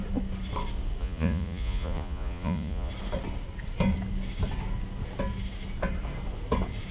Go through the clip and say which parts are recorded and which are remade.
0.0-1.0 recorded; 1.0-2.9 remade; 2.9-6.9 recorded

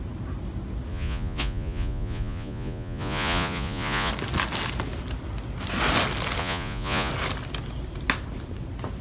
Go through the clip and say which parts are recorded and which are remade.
0.0-0.9 recorded; 0.9-4.1 remade; 4.1-6.4 recorded; 6.4-7.1 remade; 7.1-9.0 recorded

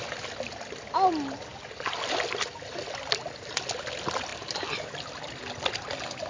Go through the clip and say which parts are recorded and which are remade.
0.0-6.3 recorded

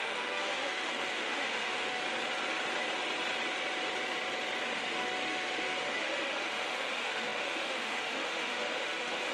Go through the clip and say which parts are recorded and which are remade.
0.0-2.0 remade; 2.0-4.7 recorded; 4.7-9.3 remade

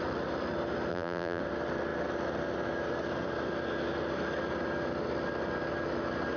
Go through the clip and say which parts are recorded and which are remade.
0.0-0.9 recorded; 0.9-1.4 remade; 1.4-6.4 recorded